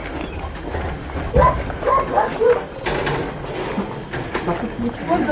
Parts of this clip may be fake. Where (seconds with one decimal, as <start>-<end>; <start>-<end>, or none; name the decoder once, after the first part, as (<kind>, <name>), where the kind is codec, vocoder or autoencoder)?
none

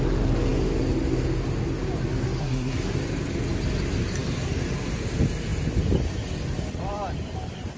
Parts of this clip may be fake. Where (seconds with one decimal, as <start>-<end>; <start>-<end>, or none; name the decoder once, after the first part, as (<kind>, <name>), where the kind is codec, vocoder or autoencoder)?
2.4-3.0 (codec, SNAC)

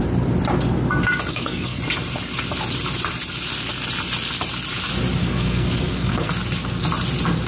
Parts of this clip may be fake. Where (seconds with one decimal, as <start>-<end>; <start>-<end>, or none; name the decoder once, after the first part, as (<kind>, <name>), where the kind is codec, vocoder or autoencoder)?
1.3-1.8 (codec, SNAC); 5.2-6.3